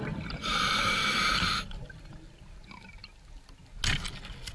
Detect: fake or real real